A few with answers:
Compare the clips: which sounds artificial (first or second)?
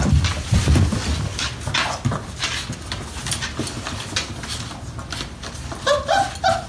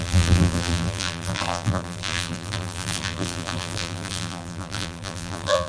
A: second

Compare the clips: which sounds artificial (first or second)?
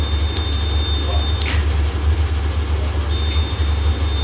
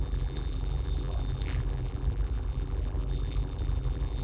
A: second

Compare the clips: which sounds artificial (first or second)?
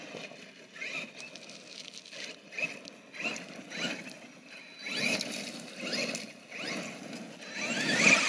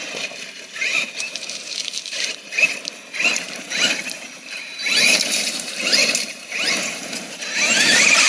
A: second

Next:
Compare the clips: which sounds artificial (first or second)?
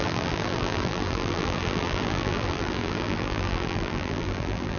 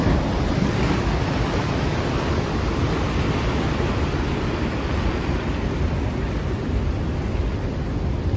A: first